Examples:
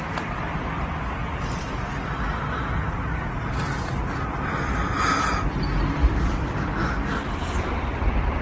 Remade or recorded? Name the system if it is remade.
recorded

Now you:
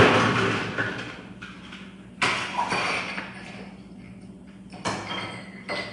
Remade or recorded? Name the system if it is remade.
recorded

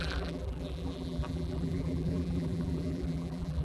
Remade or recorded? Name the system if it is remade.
remade, vocoder, BigVGAN v2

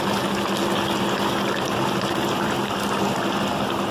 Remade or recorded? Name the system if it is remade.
recorded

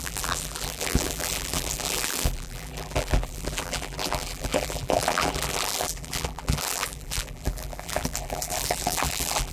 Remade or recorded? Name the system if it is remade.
remade, vocoder, BigVGAN v2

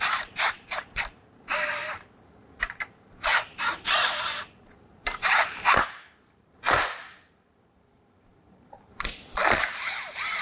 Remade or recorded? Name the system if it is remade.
remade, vocoder, BigVGAN v2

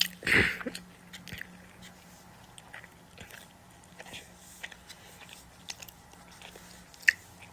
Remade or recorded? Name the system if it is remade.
recorded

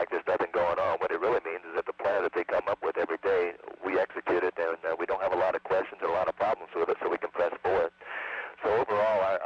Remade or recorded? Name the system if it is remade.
remade, vocoder, BigVGAN v2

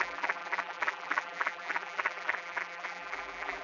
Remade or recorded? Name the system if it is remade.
remade, vocoder, BigVGAN v2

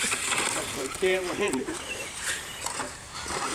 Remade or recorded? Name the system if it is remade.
remade, vocoder, BigVGAN v2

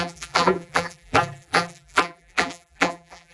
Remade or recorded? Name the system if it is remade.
remade, vocoder, BigVGAN v2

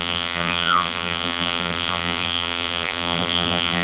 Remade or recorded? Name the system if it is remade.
remade, vocoder, BigVGAN v2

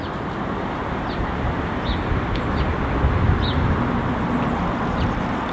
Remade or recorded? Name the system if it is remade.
recorded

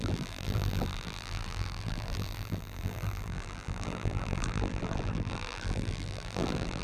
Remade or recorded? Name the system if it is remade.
remade, vocoder, BigVGAN v2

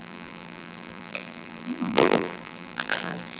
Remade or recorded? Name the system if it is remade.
remade, vocoder, BigVGAN v2